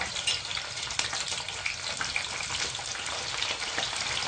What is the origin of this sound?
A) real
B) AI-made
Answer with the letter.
A